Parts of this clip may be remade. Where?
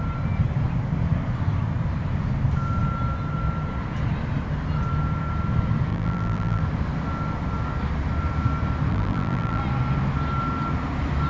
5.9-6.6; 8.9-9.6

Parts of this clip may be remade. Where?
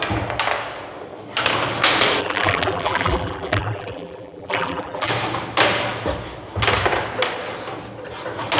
2.2-5.1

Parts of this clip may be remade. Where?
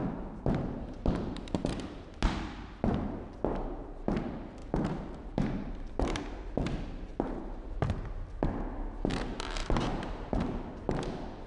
0.0-1.7; 4.6-6.2; 7.1-7.7; 9.6-10.6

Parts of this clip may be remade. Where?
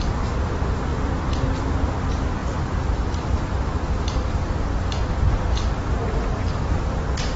0.0-7.4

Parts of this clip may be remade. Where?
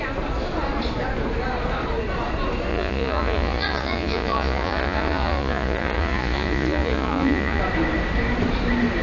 2.7-7.6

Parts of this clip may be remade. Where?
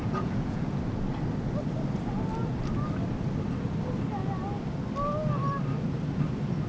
0.0-0.8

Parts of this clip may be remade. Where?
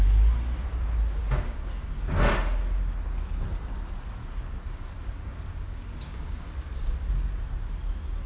1.2-2.0; 4.2-6.5